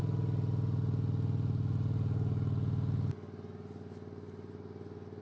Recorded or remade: recorded